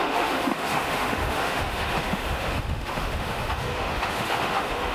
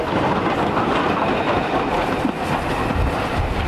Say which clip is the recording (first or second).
second